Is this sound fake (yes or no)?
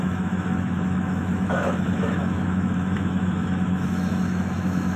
yes